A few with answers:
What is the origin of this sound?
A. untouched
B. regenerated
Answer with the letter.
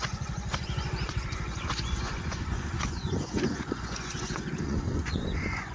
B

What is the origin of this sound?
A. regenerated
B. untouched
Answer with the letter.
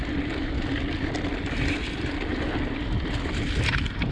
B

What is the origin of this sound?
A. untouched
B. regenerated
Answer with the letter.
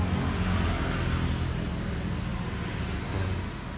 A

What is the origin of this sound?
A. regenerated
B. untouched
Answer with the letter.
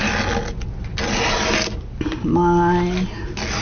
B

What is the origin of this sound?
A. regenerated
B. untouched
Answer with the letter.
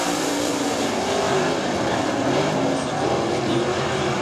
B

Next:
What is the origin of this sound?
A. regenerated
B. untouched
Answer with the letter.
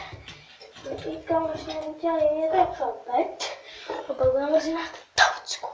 B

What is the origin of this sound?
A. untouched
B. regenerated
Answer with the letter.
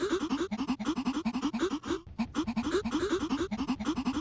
A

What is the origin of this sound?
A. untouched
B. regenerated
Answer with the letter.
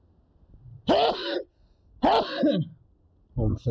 A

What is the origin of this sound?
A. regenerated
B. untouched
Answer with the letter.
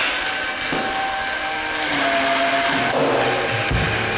B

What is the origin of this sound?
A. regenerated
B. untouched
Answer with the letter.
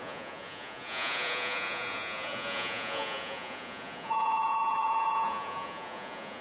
A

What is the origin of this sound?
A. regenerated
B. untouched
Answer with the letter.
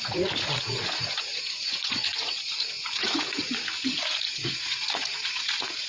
A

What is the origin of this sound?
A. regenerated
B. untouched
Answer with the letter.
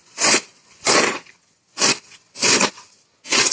A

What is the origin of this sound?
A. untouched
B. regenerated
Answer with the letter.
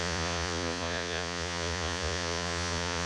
B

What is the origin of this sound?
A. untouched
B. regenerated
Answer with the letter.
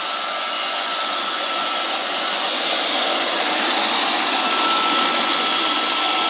B